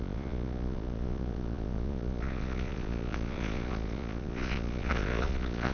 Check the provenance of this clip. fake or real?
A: fake